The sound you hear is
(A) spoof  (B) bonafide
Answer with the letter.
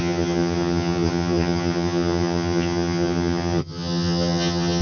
A